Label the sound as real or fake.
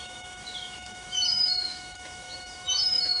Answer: fake